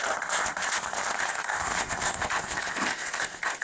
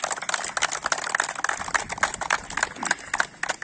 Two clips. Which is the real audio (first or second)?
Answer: second